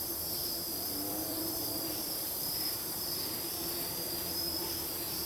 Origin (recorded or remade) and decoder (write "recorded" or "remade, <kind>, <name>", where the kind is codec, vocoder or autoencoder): remade, vocoder, BigVGAN v2